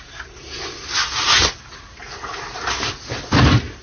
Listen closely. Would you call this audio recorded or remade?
recorded